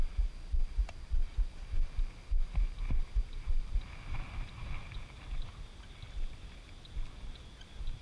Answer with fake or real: real